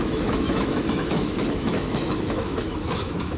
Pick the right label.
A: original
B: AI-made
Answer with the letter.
B